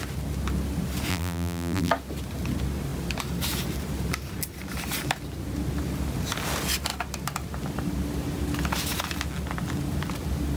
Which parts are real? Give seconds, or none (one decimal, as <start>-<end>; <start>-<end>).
0.0-1.1; 1.9-10.6